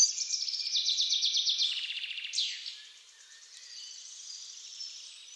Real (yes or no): yes